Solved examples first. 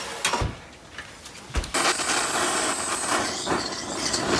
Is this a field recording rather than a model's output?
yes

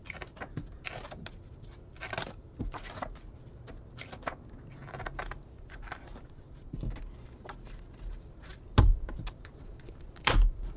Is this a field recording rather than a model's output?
yes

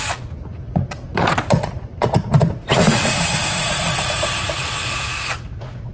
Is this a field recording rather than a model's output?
no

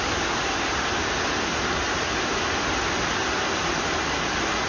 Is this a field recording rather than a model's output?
yes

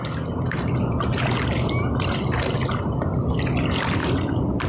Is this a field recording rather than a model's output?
yes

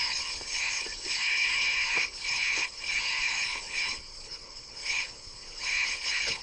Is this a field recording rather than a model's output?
no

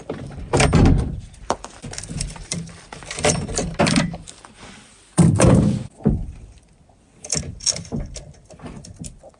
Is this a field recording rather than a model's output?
no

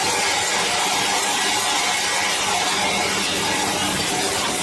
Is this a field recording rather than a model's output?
yes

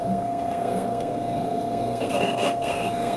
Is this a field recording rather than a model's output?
no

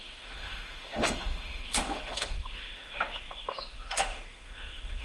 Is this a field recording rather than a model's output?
no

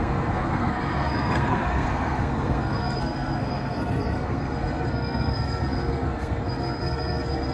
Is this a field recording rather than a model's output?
no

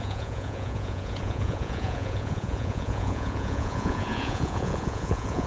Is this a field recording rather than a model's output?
no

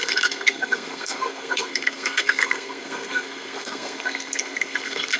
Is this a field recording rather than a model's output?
no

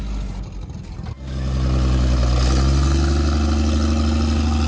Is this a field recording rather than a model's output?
yes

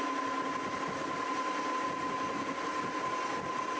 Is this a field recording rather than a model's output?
yes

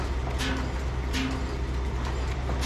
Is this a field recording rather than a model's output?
yes